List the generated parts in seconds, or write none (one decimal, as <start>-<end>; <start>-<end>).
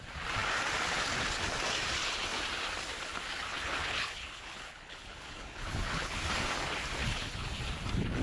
3.5-6.2; 7.0-7.6